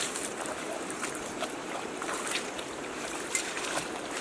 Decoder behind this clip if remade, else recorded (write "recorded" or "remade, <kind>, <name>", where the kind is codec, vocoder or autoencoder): remade, vocoder, BigVGAN v2